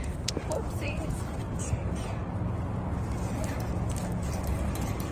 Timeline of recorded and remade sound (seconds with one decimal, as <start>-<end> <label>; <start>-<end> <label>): 0.0-1.8 remade; 1.8-4.4 recorded; 4.4-5.1 remade